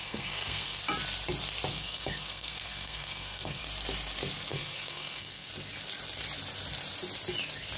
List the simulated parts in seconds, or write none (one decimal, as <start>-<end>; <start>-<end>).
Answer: 0.0-0.8; 1.7-3.6; 4.5-5.5

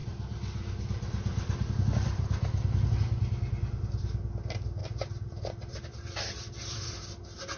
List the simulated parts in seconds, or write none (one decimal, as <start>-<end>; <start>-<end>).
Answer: 0.0-1.7; 4.8-7.6